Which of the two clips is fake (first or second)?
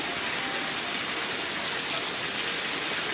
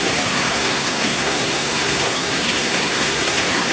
second